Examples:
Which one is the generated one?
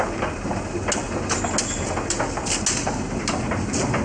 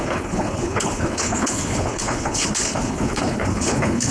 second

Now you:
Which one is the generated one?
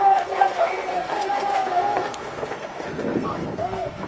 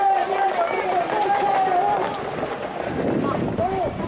first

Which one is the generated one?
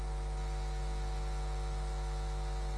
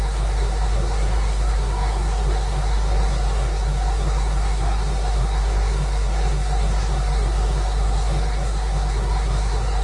second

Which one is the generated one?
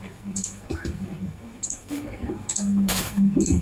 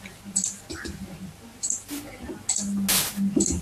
first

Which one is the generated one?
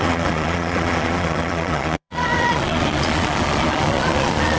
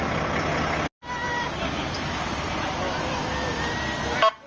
first